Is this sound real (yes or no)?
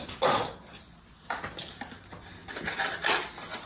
yes